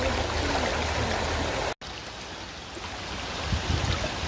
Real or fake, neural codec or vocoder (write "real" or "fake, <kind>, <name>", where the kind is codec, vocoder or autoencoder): real